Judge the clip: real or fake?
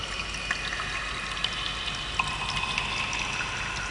real